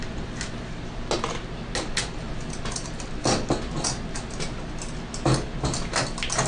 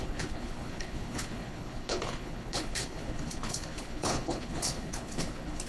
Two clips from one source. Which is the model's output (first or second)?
second